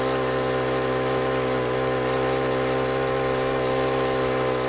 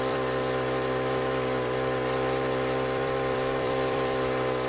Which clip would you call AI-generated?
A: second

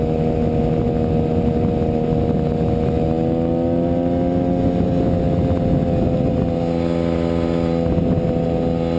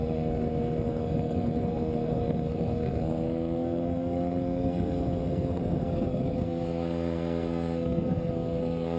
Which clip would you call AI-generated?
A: second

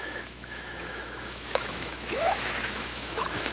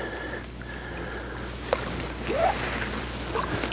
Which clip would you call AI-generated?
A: first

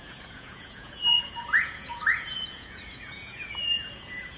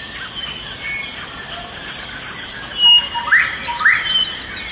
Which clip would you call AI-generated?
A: first